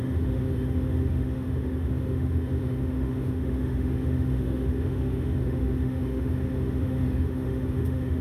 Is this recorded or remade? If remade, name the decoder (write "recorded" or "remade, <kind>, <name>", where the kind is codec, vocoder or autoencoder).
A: remade, autoencoder, DAC-VAE